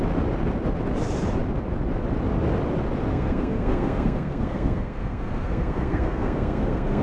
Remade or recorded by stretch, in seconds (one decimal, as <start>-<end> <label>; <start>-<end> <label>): 0.0-3.1 recorded; 3.1-7.0 remade